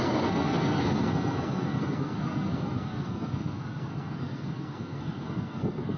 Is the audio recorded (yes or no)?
no